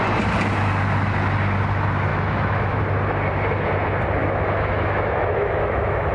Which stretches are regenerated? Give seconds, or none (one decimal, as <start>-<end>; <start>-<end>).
2.1-2.8; 4.2-6.1